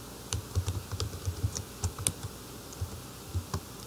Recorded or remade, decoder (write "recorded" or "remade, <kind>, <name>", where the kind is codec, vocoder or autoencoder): remade, vocoder, BigVGAN v2